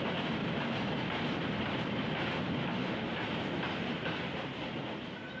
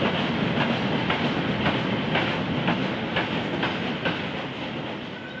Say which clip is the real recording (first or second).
second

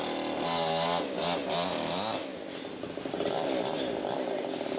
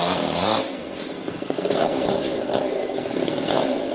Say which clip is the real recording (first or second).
first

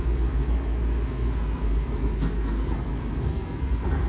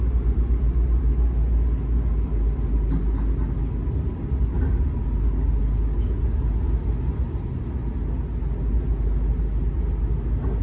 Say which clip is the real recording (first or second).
second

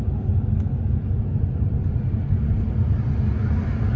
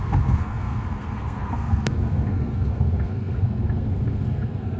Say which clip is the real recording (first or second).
first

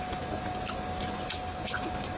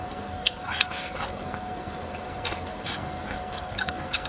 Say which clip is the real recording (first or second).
first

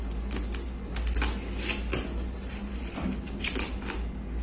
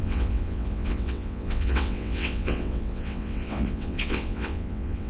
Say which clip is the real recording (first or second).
first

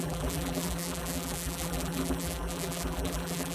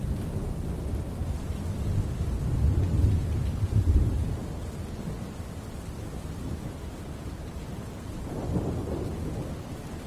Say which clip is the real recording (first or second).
second